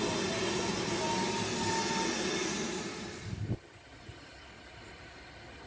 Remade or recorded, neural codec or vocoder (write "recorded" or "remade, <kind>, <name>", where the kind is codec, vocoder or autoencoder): recorded